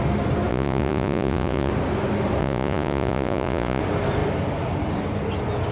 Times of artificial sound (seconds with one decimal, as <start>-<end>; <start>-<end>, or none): 0.5-1.7; 2.4-3.8